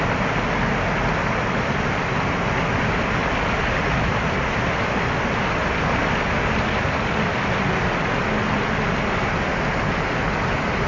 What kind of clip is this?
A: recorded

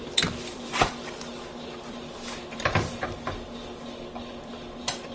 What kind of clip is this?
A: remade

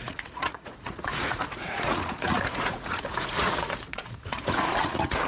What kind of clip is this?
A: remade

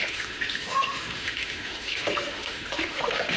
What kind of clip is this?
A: remade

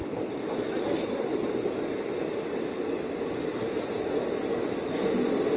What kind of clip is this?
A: recorded